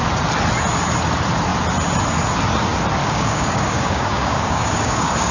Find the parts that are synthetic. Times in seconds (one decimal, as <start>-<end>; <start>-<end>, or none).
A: 3.0-5.3